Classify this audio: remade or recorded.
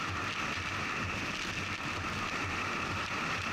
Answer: recorded